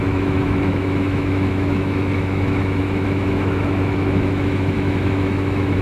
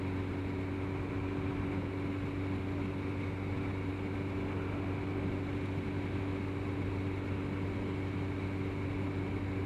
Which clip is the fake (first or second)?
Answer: first